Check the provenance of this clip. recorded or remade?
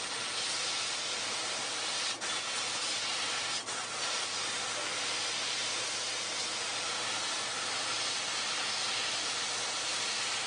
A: recorded